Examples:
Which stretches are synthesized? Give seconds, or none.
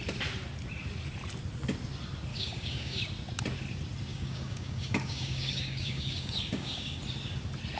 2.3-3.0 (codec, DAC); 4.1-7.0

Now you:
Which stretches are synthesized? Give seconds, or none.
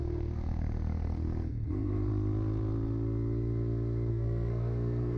0.0-2.1 (codec, SNAC); 4.1-5.2